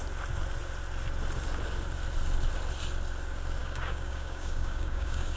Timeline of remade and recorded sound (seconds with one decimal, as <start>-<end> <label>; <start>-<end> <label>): 0.0-3.6 recorded; 3.6-5.4 remade